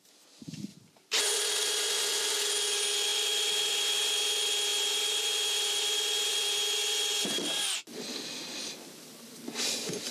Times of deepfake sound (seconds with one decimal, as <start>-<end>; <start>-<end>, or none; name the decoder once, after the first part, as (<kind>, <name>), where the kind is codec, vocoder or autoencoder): 0.7-1.2 (vocoder, BigVGAN v2)